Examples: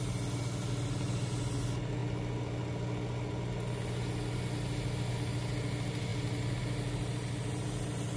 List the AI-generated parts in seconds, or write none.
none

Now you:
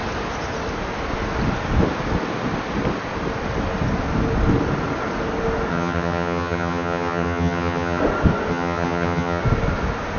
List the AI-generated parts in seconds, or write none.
5.7-8.0 (vocoder, HiFi-GAN); 8.5-9.4

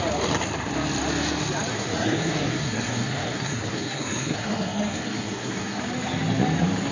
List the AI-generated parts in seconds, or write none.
1.7-5.8 (codec, SNAC)

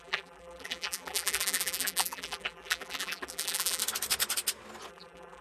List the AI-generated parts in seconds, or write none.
0.0-3.8 (vocoder, BigVGAN v2); 4.9-5.4

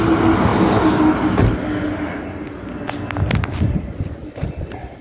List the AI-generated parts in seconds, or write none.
4.2-5.0 (vocoder, BigVGAN v2)

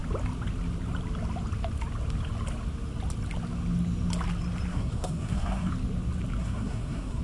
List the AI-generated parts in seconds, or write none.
4.7-5.7 (codec, SNAC); 6.4-7.2